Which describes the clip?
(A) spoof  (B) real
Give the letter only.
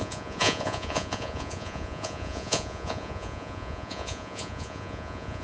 A